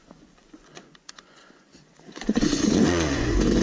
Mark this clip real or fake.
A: fake